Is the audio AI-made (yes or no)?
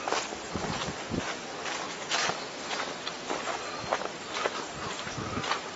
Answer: no